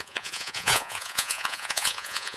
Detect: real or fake fake